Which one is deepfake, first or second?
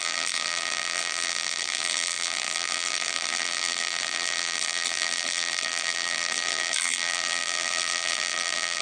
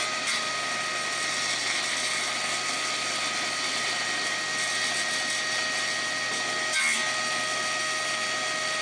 first